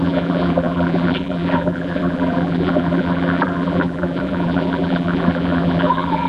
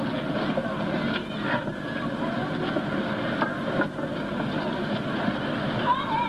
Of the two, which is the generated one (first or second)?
first